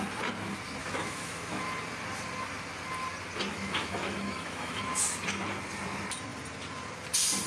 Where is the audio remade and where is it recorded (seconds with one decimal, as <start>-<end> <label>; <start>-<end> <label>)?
0.0-0.8 recorded; 0.8-1.6 remade; 1.6-3.5 recorded; 3.5-4.8 remade; 4.8-7.5 recorded